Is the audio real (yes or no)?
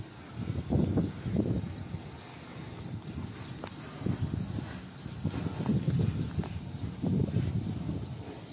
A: yes